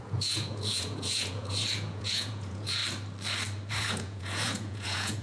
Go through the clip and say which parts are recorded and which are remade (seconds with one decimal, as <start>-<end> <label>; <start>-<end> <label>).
0.0-2.8 remade; 2.8-3.7 recorded; 3.7-5.2 remade